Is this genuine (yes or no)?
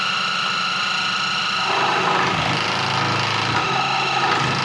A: yes